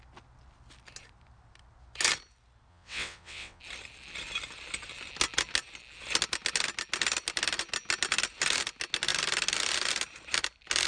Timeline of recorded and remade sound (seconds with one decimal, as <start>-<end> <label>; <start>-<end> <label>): 0.0-2.7 recorded; 2.7-3.6 remade; 3.6-10.9 recorded